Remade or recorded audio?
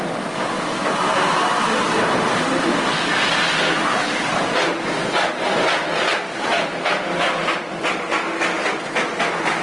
recorded